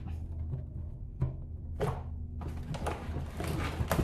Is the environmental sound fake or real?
real